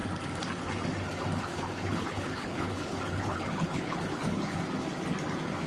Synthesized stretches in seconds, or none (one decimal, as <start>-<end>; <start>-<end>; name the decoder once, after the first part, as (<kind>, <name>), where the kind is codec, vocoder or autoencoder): 1.5-4.6 (codec, HILCodec)